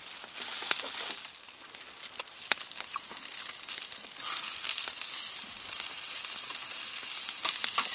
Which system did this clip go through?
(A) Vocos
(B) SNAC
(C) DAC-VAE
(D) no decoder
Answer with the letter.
D